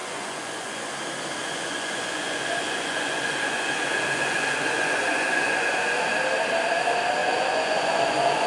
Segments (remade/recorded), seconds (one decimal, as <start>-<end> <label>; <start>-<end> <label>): 0.0-0.9 remade; 0.9-1.4 recorded; 1.4-6.1 remade; 6.1-7.2 recorded; 7.2-8.5 remade